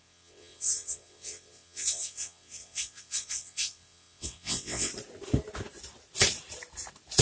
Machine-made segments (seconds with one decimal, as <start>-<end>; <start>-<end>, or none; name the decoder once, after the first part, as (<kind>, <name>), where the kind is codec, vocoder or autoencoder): 0.0-4.9 (vocoder, WaveNeXt)